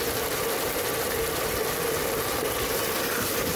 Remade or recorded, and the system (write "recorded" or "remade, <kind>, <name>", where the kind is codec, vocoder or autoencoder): recorded